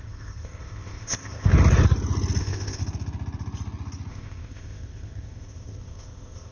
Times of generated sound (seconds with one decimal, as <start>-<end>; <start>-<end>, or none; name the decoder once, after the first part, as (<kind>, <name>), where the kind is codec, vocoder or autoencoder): 0.0-1.5 (codec, ZipCodec); 2.4-2.8; 4.1-6.5